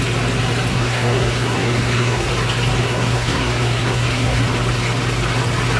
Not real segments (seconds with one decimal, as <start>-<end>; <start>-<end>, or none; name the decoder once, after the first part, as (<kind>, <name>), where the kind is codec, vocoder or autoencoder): 0.7-2.3 (codec, SNAC); 2.8-4.4